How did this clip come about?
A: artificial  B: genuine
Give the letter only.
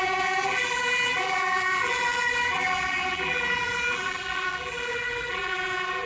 A